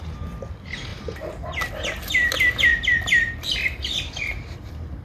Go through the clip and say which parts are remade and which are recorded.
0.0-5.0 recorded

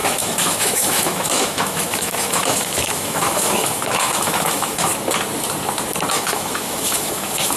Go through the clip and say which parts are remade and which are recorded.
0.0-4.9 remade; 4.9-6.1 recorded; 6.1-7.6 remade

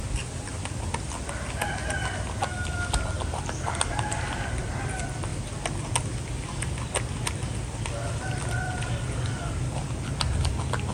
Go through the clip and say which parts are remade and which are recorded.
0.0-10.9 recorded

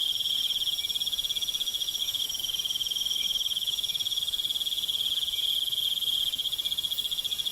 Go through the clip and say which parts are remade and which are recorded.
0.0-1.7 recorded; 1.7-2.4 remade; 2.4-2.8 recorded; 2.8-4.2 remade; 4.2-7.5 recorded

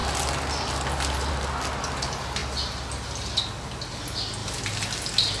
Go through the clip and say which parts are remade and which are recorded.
0.0-5.4 recorded

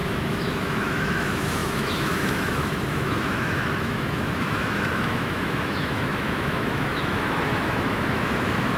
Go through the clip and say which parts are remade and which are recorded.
0.0-8.8 remade

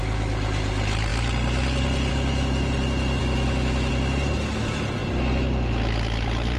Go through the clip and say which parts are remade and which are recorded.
0.0-3.2 recorded; 3.2-3.9 remade; 3.9-6.6 recorded

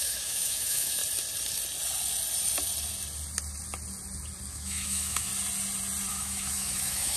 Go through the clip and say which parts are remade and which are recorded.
0.0-1.0 remade; 1.0-4.5 recorded; 4.5-5.3 remade; 5.3-6.1 recorded; 6.1-7.2 remade